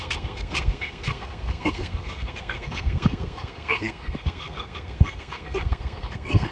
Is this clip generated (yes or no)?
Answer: yes